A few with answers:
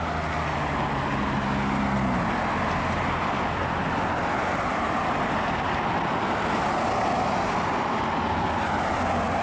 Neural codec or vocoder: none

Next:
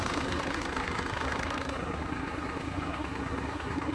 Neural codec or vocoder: codec, SNAC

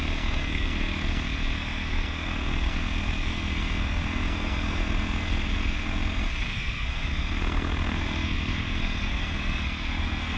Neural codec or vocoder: codec, SNAC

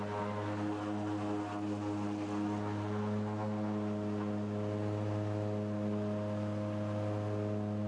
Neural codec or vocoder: none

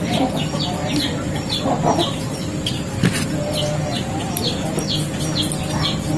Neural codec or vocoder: none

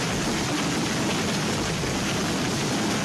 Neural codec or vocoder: none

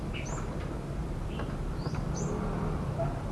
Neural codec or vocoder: none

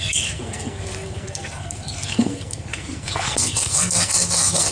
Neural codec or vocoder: codec, SNAC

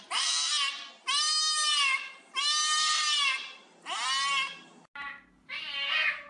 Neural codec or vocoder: none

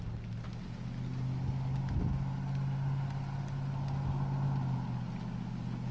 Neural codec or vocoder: none